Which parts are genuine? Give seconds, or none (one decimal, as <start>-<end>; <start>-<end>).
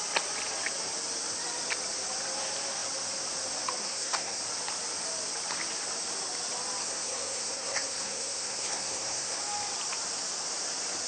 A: 0.0-3.8; 4.4-6.8; 9.4-11.1